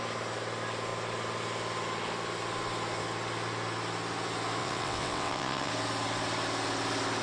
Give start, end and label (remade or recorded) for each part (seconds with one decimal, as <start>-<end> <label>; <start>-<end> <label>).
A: 0.0-4.6 recorded; 4.6-5.7 remade; 5.7-7.2 recorded